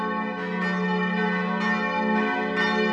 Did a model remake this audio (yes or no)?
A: no